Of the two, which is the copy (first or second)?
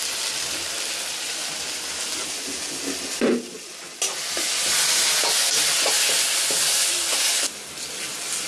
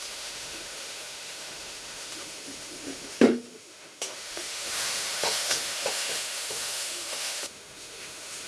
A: second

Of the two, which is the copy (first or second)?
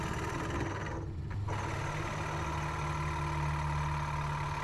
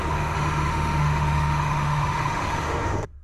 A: second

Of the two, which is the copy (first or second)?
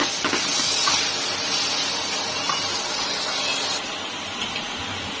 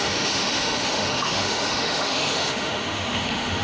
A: second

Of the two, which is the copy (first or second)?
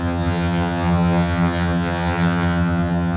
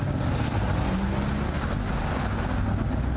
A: first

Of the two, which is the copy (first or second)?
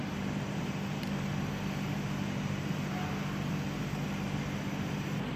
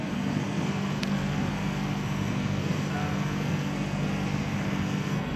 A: second